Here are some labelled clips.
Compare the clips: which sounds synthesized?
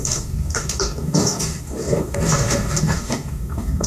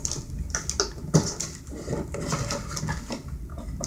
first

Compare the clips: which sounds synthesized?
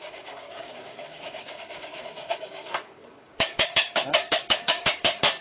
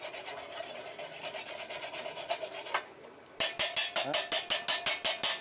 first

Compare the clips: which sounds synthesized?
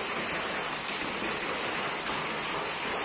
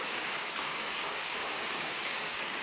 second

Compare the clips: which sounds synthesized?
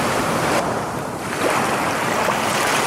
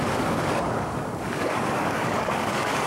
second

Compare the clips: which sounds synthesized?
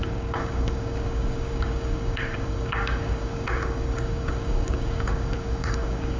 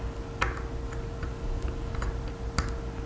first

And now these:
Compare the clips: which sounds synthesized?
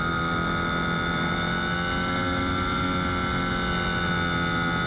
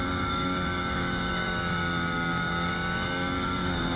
second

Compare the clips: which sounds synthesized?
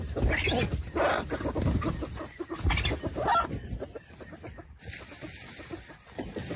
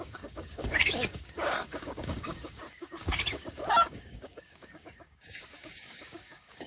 second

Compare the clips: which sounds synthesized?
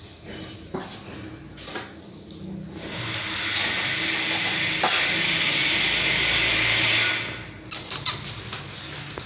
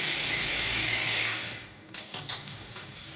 second